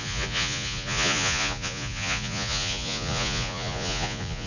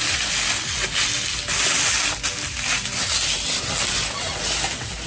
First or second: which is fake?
first